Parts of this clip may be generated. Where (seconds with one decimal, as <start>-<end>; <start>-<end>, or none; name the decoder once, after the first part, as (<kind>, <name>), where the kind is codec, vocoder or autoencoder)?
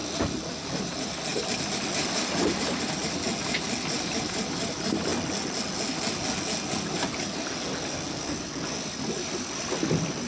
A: 0.6-1.3 (vocoder, BigVGAN v2); 2.0-5.1; 8.8-10.3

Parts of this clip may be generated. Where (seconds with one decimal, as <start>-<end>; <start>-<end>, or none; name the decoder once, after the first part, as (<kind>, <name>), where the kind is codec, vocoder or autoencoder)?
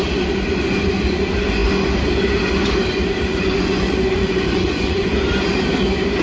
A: 3.3-5.1 (vocoder, Vocos)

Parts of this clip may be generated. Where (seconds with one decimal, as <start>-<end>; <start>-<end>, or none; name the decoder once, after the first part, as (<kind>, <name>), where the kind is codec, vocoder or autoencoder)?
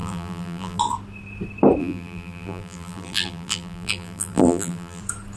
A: 0.0-0.8 (vocoder, BigVGAN v2); 1.8-5.0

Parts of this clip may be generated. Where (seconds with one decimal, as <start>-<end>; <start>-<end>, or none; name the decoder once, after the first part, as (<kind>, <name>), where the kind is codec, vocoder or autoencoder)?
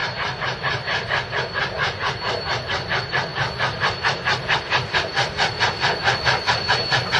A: none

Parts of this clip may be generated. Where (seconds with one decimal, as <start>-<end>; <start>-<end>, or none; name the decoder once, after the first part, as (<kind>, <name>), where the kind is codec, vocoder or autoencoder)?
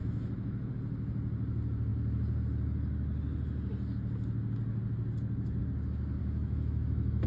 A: 0.0-0.7 (autoencoder, DAC-VAE); 6.2-7.3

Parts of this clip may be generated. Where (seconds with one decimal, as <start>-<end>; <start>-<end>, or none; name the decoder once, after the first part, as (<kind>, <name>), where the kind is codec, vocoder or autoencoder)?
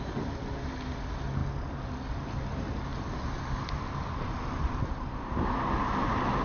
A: none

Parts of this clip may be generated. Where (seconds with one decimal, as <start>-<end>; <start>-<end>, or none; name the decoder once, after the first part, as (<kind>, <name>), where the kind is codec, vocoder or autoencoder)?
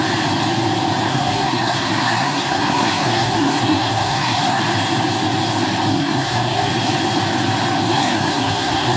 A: 1.1-4.6 (codec, SNAC); 5.9-6.7; 7.9-9.0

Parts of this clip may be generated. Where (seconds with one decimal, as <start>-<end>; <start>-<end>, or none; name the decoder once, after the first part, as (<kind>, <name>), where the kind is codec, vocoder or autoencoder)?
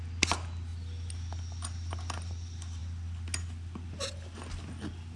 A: none